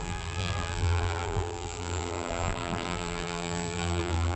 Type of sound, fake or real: fake